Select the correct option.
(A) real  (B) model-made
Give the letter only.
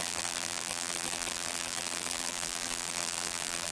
B